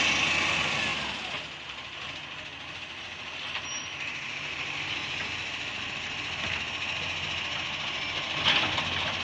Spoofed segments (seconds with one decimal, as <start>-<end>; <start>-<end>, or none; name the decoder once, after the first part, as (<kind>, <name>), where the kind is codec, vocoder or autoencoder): none